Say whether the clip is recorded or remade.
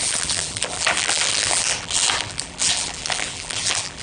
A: remade